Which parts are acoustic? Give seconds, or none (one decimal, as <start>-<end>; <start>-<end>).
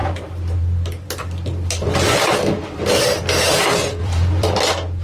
3.0-4.0; 4.6-5.0